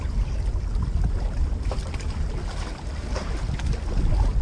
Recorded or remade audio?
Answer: recorded